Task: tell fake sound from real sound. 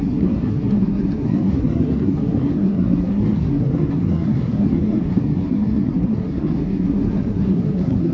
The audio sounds fake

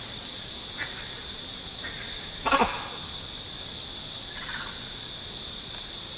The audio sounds real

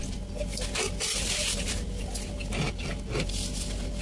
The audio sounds real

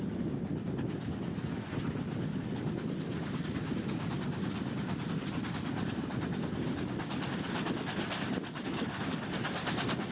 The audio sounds real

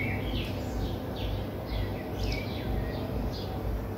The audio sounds real